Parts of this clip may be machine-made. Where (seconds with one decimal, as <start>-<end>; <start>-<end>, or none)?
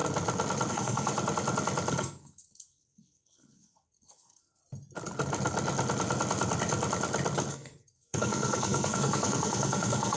0.7-1.1; 1.9-4.6; 7.5-10.2